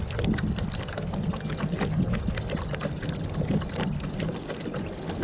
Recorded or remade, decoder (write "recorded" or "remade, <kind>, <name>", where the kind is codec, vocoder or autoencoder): recorded